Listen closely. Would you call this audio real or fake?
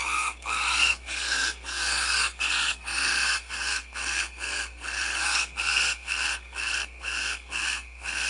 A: fake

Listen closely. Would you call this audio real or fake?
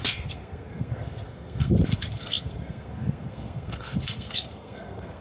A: fake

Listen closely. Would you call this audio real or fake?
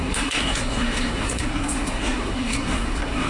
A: fake